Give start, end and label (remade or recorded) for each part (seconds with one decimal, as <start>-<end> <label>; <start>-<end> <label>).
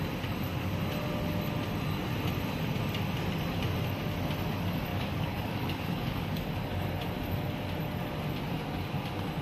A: 0.0-4.9 recorded; 4.9-6.5 remade; 6.5-9.4 recorded